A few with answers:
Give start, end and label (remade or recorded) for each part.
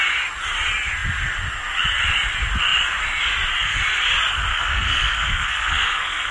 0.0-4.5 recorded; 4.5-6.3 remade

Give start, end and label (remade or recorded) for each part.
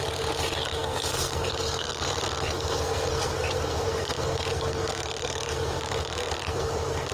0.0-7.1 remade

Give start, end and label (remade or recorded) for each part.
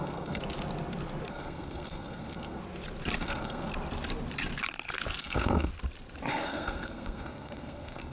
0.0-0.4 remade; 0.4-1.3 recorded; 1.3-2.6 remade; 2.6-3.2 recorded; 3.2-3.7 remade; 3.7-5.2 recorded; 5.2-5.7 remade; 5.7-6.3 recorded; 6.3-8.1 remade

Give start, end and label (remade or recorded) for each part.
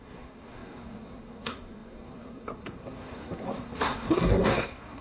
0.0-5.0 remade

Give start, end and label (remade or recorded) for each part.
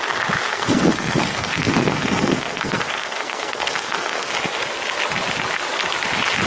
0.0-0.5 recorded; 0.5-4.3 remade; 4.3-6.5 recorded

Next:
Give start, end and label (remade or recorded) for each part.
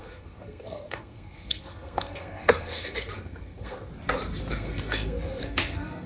0.0-3.9 remade; 3.9-4.5 recorded; 4.5-6.1 remade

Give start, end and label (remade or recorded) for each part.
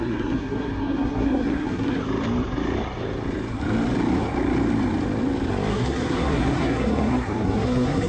0.0-2.0 remade; 2.0-5.7 recorded; 5.7-8.1 remade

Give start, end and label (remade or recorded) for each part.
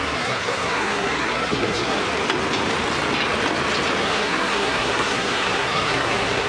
0.0-2.0 remade; 2.0-4.0 recorded; 4.0-6.5 remade